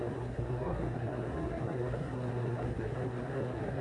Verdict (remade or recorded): remade